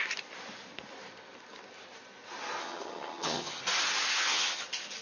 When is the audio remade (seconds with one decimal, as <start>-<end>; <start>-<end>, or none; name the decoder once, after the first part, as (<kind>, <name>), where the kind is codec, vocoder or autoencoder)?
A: 2.6-3.6 (vocoder, HiFi-GAN); 4.1-4.6